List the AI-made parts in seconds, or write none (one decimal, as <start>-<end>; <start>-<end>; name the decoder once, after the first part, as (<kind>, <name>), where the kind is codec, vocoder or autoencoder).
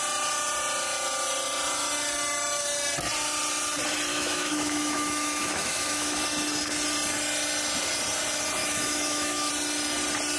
4.1-6.2 (autoencoder, DAC-VAE); 8.6-9.5